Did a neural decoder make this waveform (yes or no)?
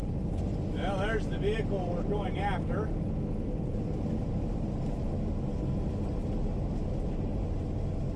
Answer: no